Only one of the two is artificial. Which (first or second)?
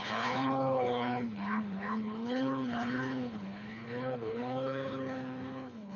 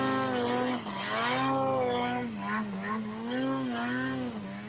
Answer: first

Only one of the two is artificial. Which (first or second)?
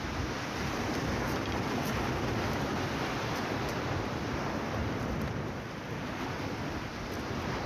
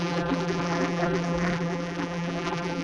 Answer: second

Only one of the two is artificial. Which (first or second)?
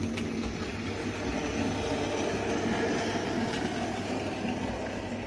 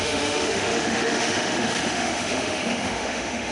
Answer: second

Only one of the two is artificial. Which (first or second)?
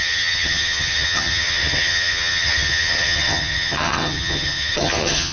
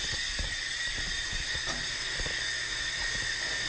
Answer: first